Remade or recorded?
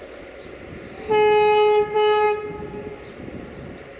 recorded